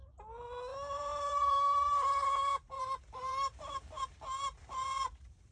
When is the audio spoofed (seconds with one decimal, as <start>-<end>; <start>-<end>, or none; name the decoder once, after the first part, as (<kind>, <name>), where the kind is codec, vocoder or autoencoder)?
0.7-4.0 (vocoder, BigVGAN v2); 4.6-5.5